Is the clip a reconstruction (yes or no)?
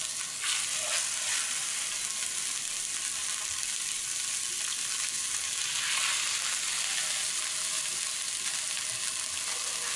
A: no